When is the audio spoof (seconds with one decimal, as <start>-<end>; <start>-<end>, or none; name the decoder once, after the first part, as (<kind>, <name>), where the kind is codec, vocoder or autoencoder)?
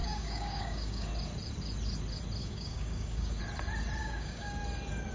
0.0-1.1 (codec, DAC); 2.4-3.4; 4.0-4.6